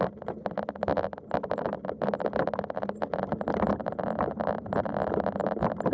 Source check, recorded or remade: recorded